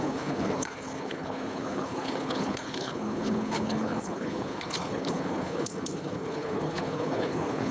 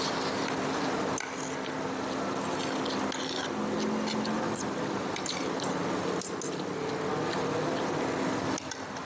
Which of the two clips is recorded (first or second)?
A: second